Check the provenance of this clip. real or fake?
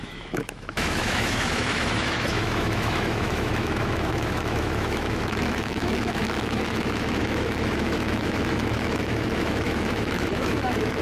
fake